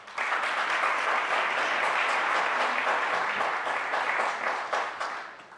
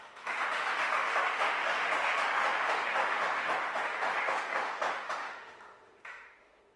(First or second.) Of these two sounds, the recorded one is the first